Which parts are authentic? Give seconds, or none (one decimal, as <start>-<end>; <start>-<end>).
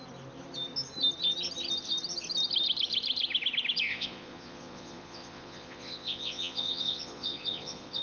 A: 0.0-3.9